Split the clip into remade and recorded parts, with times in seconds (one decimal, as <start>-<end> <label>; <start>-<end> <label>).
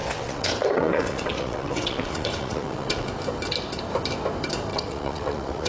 0.0-3.1 remade; 3.1-4.7 recorded; 4.7-5.7 remade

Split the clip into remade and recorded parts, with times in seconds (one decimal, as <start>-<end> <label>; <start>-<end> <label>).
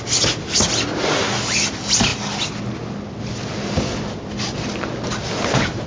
0.0-5.9 recorded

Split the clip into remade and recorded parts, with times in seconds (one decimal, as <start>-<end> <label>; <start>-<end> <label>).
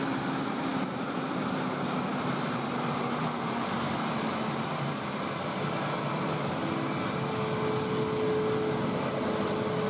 0.0-9.9 recorded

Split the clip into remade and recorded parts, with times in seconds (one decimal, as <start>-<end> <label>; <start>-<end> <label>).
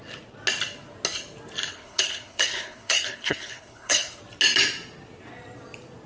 0.0-1.7 recorded; 1.7-4.2 remade; 4.2-6.1 recorded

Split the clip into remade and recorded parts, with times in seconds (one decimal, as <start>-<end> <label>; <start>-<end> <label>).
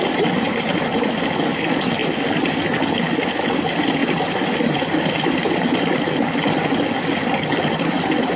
0.0-8.4 recorded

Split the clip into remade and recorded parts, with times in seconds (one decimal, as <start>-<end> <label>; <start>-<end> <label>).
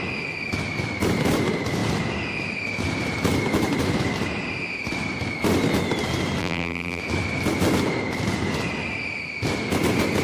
0.0-6.4 recorded; 6.4-7.0 remade; 7.0-10.2 recorded